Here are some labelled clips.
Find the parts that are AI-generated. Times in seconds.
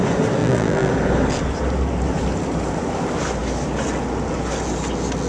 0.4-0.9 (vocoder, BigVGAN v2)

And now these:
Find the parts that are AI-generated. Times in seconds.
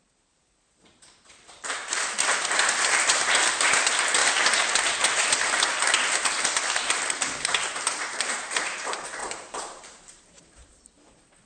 0.0-1.8 (vocoder, BigVGAN v2); 2.6-4.2; 7.9-11.5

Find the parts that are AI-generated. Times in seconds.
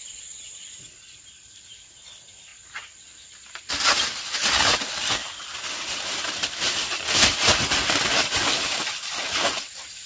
0.0-2.5 (vocoder, BigVGAN v2); 4.7-5.2; 6.1-10.1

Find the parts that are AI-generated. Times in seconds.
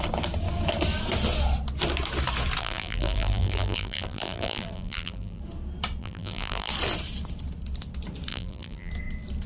2.6-5.4 (vocoder, BigVGAN v2); 6.0-6.7; 8.3-8.9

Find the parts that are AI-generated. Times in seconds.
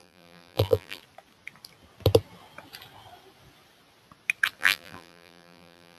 0.0-1.0 (vocoder, BigVGAN v2); 4.6-6.0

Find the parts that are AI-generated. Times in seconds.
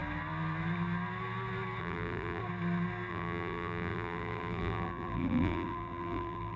1.8-2.4 (vocoder, BigVGAN v2); 3.1-6.6